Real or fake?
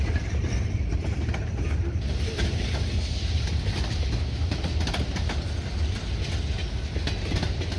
real